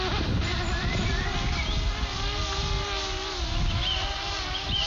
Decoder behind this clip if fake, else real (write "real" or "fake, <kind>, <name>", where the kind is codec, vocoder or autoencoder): real